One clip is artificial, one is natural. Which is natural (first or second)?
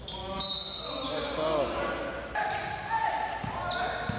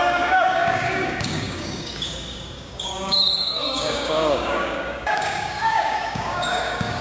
first